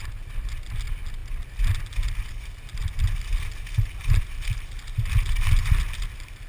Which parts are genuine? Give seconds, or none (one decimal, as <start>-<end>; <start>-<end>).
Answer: 0.0-6.5